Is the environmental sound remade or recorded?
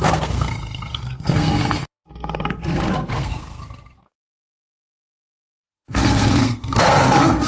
remade